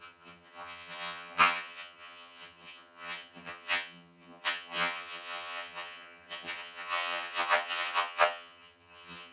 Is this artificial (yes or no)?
yes